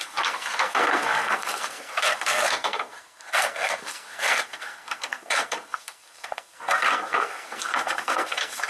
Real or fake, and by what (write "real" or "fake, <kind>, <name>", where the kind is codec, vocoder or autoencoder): fake, codec, SNAC